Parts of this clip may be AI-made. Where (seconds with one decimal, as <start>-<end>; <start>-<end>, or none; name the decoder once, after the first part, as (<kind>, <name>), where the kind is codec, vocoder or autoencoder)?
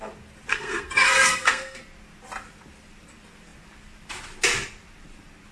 0.5-1.8 (codec, SNAC)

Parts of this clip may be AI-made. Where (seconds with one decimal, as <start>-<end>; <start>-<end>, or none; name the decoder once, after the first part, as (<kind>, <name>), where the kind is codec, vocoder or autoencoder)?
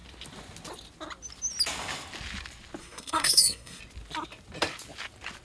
2.8-3.8 (codec, SNAC)